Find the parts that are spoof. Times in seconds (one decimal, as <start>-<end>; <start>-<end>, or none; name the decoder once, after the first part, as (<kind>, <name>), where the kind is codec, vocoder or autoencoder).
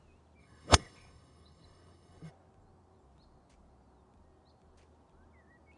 0.4-2.3 (codec, HILCodec)